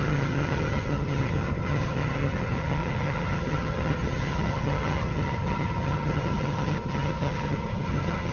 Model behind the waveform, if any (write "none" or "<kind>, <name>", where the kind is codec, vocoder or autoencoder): vocoder, HiFi-GAN